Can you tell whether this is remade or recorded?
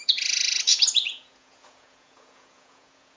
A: remade